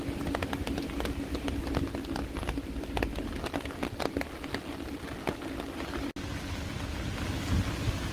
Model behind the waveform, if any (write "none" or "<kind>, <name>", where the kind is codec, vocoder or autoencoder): none